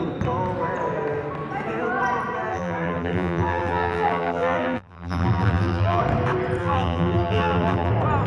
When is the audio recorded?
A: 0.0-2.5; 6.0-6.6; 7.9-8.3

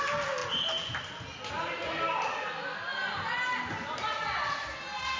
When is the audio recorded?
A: 0.0-5.2